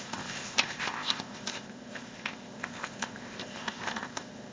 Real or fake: fake